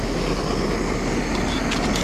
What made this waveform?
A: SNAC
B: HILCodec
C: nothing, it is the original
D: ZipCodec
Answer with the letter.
C